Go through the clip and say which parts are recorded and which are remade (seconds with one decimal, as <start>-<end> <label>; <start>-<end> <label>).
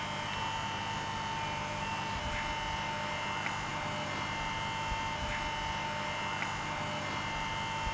0.0-7.9 recorded